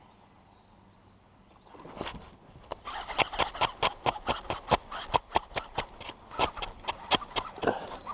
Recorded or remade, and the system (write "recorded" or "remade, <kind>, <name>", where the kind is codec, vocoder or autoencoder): recorded